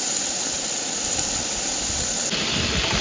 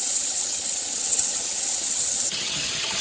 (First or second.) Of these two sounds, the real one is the first